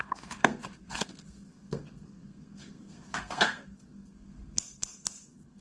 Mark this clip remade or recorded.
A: remade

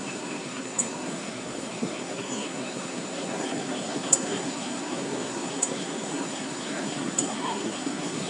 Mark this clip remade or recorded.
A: remade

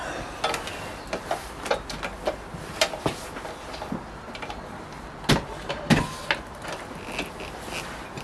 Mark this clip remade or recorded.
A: recorded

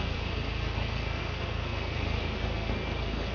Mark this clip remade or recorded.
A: remade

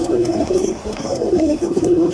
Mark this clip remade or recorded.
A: remade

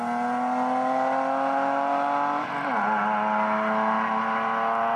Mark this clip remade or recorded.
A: recorded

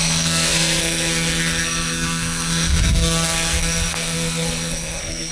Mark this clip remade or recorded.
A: remade